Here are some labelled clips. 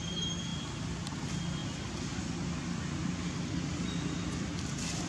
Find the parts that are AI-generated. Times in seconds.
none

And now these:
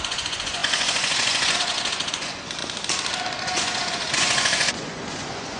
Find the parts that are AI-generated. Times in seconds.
0.0-2.6; 3.4-5.6

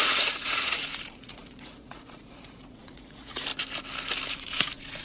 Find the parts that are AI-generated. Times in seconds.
0.0-3.5; 4.3-5.0

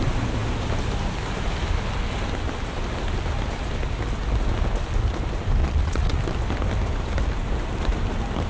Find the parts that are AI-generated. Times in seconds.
5.6-6.2

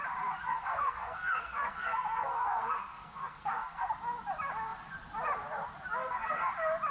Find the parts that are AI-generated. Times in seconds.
0.5-3.9; 6.0-6.5